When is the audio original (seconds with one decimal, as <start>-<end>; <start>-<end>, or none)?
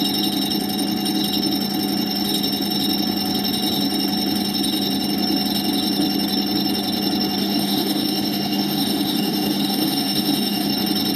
0.0-7.4; 10.7-11.2